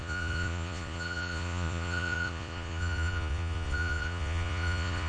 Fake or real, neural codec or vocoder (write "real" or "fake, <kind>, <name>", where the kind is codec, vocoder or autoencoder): fake, vocoder, Vocos